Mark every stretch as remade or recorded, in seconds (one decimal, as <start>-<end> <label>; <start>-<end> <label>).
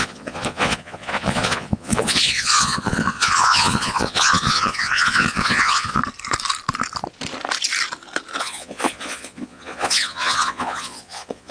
0.0-6.0 remade; 6.0-8.4 recorded; 8.4-11.5 remade